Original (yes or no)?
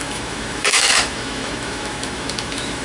no